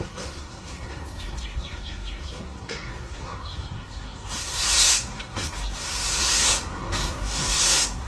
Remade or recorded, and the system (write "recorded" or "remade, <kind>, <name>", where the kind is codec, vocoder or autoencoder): remade, codec, SNAC